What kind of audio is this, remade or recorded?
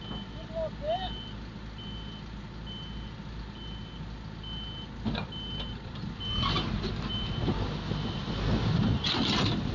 recorded